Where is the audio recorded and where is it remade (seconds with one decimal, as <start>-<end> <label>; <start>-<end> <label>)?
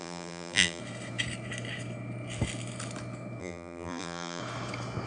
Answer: 0.0-0.8 remade; 0.8-3.4 recorded; 3.4-4.4 remade; 4.4-5.1 recorded